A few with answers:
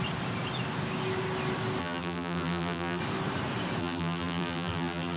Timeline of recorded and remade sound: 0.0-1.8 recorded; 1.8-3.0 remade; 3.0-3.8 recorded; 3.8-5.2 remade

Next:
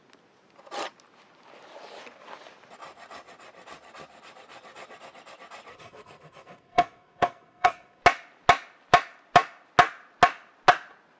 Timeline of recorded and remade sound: 0.0-5.7 recorded; 5.7-8.0 remade; 8.0-11.2 recorded